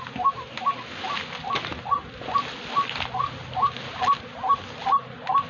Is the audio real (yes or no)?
yes